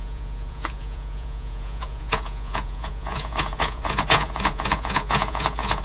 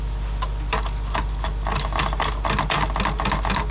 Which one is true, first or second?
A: second